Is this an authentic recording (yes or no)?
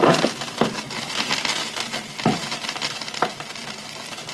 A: yes